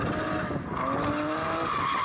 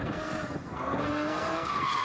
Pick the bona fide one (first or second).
first